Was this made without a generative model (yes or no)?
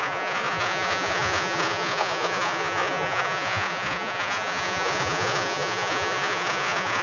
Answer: no